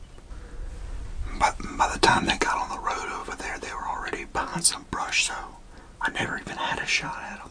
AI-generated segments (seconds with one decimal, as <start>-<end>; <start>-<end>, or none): 1.3-2.7